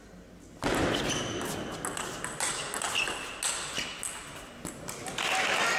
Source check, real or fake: real